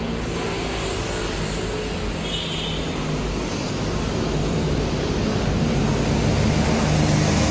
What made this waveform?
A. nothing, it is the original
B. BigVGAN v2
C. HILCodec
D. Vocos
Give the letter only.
A